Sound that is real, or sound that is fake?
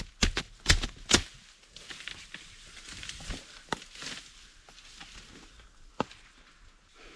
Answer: real